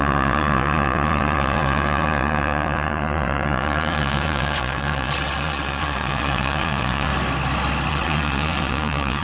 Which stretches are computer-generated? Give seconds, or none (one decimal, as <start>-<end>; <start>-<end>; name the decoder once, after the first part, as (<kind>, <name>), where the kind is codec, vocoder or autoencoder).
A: 0.0-7.1 (vocoder, WaveNeXt); 7.9-9.2